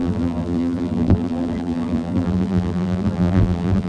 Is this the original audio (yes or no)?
no